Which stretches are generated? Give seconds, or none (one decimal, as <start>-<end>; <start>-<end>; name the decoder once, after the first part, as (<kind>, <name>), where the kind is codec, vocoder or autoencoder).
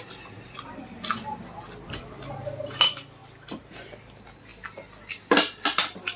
none